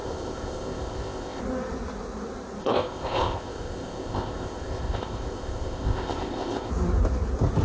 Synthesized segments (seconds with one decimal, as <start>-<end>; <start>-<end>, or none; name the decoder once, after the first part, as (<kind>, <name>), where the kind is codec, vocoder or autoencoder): 0.0-1.4 (codec, ZipCodec); 2.6-6.7